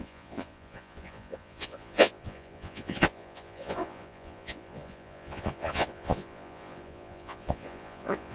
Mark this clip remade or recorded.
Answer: remade